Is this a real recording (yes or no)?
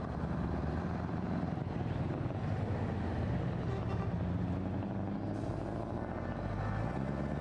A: yes